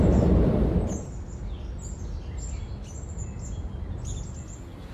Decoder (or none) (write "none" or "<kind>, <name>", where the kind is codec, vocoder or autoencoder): none